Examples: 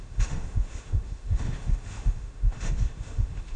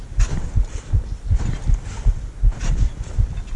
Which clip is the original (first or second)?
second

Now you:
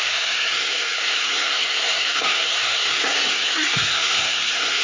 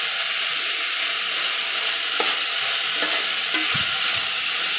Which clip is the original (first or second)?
second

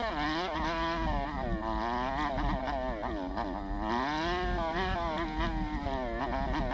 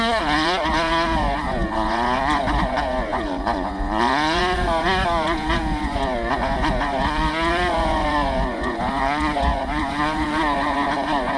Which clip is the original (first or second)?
first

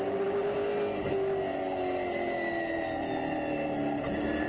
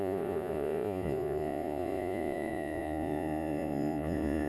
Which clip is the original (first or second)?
first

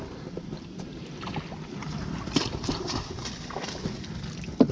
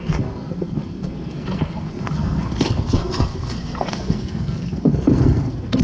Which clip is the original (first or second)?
first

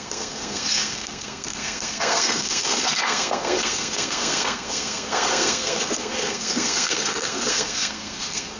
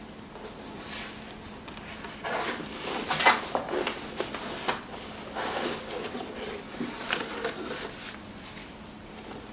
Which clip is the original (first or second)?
second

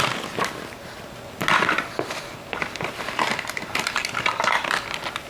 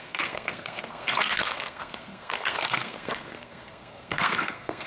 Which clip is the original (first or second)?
first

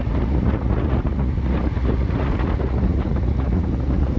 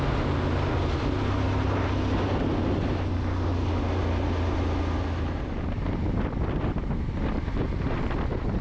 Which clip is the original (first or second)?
second